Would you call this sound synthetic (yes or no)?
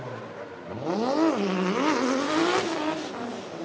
no